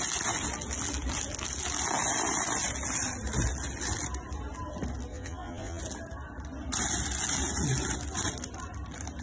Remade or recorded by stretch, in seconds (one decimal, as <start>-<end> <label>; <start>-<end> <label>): 0.0-5.1 recorded; 5.1-5.8 remade; 5.8-9.2 recorded